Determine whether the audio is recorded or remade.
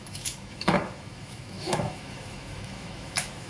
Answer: remade